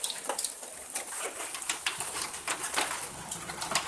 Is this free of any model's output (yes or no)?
yes